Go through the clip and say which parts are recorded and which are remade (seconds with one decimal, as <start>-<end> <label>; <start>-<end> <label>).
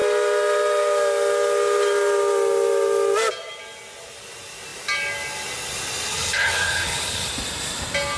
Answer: 0.0-6.1 recorded; 6.1-7.3 remade; 7.3-8.2 recorded